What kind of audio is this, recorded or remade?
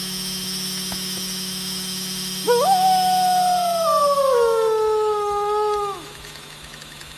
remade